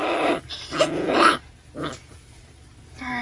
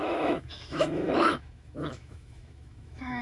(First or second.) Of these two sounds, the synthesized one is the second